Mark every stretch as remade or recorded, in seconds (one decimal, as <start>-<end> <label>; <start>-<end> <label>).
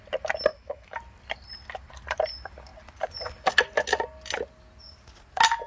0.0-0.5 recorded; 0.5-1.0 remade; 1.0-5.7 recorded